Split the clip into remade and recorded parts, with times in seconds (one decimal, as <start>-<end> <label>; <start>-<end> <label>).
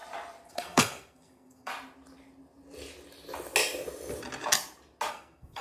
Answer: 0.0-0.5 recorded; 0.5-1.7 remade; 1.7-5.1 recorded; 5.1-5.6 remade